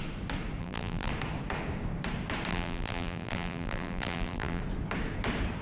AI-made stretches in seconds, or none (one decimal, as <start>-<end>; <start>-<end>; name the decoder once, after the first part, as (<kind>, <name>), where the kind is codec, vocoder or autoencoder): 0.6-1.1 (vocoder, BigVGAN v2); 2.5-4.6